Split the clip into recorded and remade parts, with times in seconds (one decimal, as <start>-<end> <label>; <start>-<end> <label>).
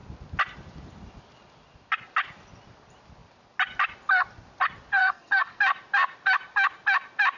0.0-5.0 recorded; 5.0-5.6 remade; 5.6-7.4 recorded